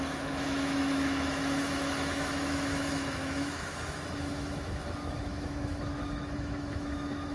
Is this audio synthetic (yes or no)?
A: yes